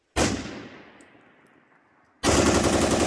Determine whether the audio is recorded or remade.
recorded